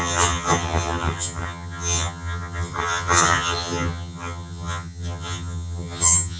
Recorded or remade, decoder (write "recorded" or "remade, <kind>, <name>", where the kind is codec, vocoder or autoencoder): remade, vocoder, HiFi-GAN